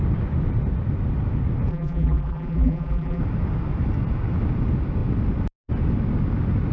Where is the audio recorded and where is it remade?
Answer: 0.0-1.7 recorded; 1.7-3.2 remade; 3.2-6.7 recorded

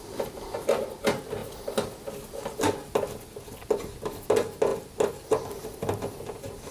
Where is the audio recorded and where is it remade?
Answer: 0.0-6.7 recorded

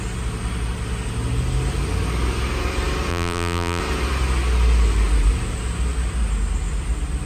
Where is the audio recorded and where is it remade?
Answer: 0.0-3.1 recorded; 3.1-3.8 remade; 3.8-7.3 recorded